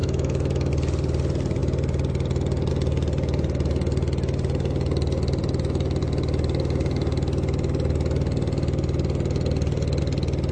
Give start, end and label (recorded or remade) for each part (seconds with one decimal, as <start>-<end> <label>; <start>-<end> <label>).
0.0-0.7 remade; 0.7-10.5 recorded